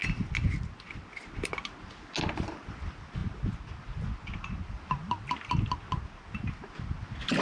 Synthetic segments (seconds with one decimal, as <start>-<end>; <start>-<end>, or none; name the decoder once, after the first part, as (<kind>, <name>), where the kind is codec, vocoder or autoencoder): none